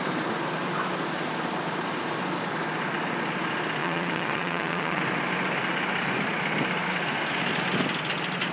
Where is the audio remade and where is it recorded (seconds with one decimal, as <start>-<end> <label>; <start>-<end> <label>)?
0.0-3.8 recorded; 3.8-5.0 remade; 5.0-8.5 recorded